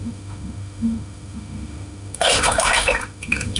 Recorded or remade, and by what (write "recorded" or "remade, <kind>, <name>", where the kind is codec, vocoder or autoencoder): remade, autoencoder, DAC-VAE